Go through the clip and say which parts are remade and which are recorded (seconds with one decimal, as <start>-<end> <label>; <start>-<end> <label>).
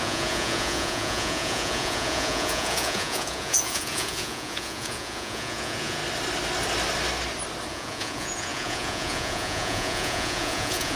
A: 0.0-6.0 remade; 6.0-7.7 recorded; 7.7-10.9 remade